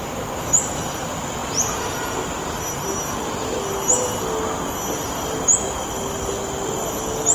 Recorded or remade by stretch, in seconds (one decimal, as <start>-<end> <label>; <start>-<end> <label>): 0.0-7.3 recorded